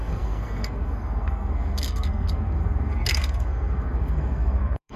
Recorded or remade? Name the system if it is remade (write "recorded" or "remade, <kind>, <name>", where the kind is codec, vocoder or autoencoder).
remade, codec, SNAC